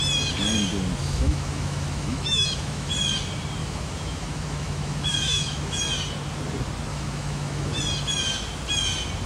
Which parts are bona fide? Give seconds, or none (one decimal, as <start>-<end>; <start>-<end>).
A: 0.0-1.0; 2.9-3.6; 5.8-6.9; 7.8-9.3